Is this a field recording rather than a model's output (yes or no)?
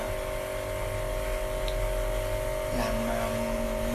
yes